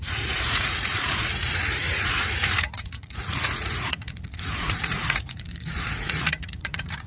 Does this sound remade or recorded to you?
remade